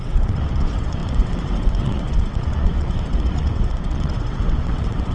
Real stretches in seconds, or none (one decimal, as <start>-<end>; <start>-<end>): none